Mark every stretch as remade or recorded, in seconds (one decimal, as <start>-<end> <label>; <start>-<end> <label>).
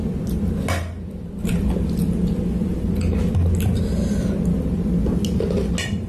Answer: 0.0-6.1 recorded